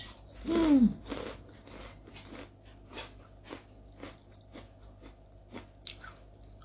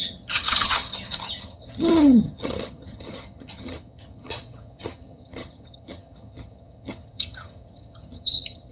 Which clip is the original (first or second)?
first